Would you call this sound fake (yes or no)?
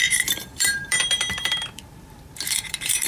yes